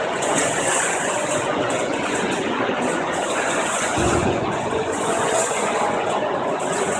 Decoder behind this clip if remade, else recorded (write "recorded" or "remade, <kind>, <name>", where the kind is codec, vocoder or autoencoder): remade, vocoder, Vocos